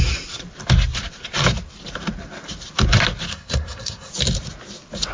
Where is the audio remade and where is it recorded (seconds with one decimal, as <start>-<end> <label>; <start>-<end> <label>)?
0.0-3.3 recorded; 3.3-4.1 remade; 4.1-5.1 recorded